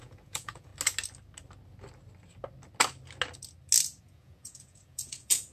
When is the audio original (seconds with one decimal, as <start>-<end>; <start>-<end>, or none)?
0.7-4.0